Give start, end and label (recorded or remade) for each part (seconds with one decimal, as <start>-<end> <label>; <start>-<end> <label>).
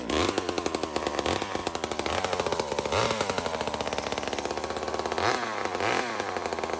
0.0-6.8 recorded